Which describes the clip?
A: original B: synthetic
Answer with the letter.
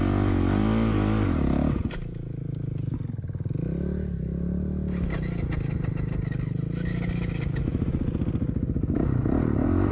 A